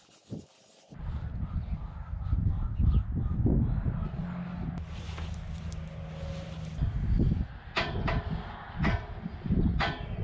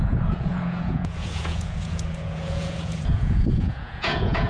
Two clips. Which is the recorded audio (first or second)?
first